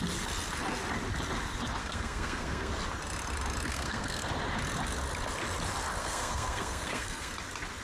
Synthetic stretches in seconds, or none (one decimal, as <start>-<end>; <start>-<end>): 1.8-2.7; 3.7-4.3; 6.0-7.3

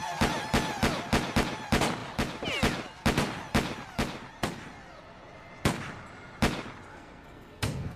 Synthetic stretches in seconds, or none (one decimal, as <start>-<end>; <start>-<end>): 6.9-8.0

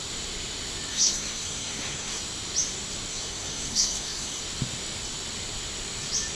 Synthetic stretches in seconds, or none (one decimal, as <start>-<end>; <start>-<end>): 0.9-2.2; 3.1-4.4

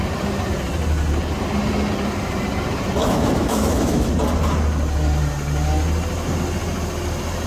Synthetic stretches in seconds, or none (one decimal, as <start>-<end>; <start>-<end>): 3.0-4.1

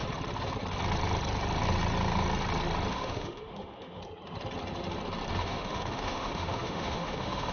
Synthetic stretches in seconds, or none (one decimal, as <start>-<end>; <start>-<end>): 2.9-4.0; 5.4-7.5

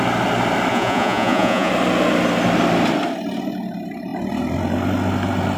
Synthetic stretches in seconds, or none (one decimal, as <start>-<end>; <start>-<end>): 0.7-1.7

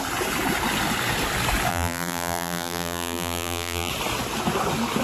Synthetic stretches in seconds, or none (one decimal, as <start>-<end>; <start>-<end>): 1.7-3.9